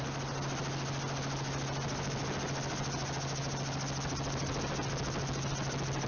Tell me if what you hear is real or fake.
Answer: real